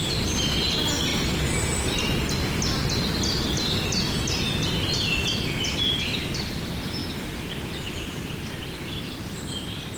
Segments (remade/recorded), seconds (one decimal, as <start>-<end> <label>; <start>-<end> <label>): 0.0-1.1 remade; 1.1-2.8 recorded; 2.8-10.0 remade